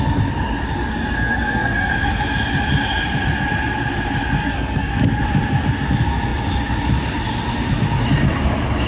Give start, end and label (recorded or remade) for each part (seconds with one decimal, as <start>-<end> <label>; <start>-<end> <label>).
0.0-0.9 recorded; 0.9-1.9 remade; 1.9-4.4 recorded; 4.4-4.9 remade; 4.9-8.9 recorded